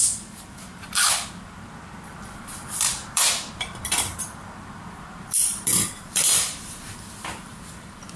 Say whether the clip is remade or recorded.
remade